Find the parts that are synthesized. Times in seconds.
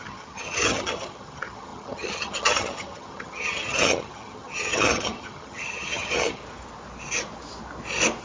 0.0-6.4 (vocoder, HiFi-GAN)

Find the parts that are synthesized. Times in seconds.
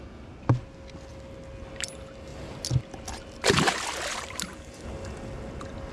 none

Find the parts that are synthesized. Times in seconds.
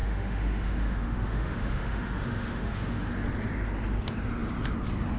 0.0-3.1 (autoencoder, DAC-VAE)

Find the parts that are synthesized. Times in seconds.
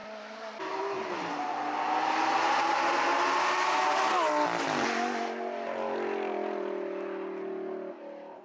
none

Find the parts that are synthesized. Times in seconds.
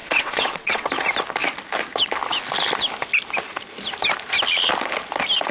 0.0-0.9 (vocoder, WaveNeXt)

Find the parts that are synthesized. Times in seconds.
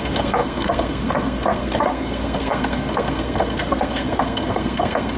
0.0-5.2 (codec, SNAC)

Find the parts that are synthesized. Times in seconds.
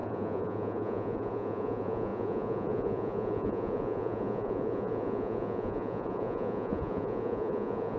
0.0-8.0 (vocoder, Vocos)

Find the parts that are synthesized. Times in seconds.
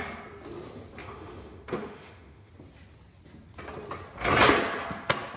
1.0-2.5 (autoencoder, DAC-VAE)